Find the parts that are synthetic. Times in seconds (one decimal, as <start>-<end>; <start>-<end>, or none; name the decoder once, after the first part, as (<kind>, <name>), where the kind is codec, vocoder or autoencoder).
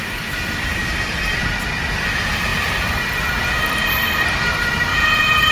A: 4.9-5.5 (vocoder, Vocos)